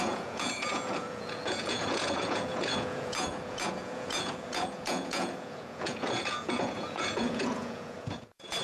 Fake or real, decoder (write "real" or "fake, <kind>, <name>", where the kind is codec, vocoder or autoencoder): fake, vocoder, Vocos